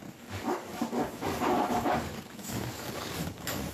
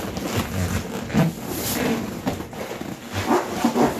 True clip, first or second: second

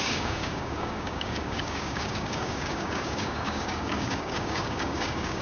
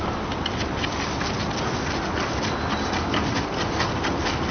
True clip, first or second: second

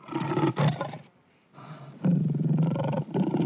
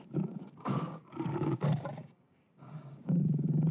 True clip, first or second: first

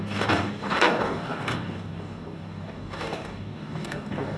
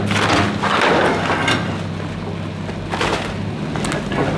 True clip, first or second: second